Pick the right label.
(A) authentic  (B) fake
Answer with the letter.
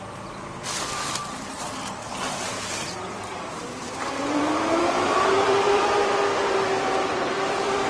B